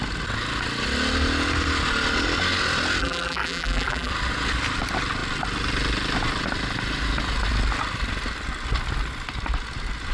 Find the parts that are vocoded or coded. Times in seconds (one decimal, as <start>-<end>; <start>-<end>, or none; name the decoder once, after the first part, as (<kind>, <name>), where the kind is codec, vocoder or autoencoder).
3.0-4.1 (vocoder, BigVGAN v2)